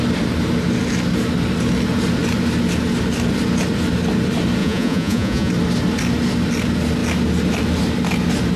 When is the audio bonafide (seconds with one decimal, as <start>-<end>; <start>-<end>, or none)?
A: 0.0-4.6; 5.5-8.6